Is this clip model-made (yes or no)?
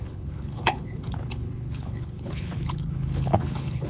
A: yes